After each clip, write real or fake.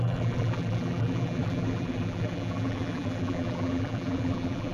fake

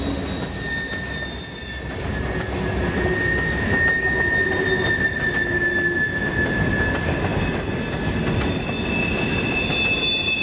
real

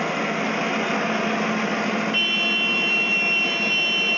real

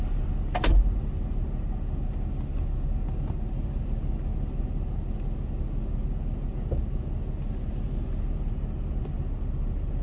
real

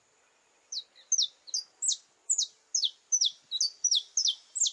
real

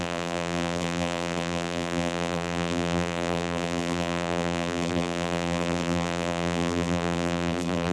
fake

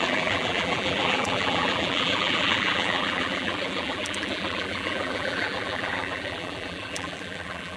fake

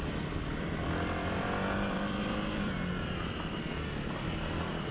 fake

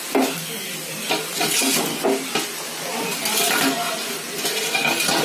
real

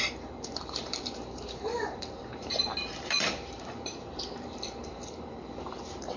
fake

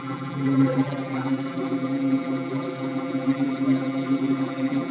fake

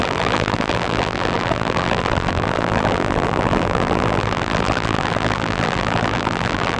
fake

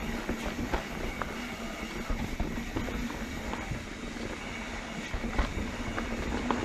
real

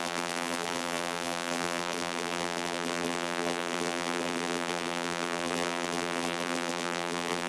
fake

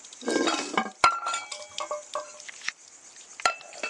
real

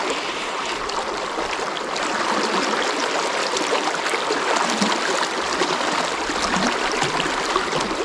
real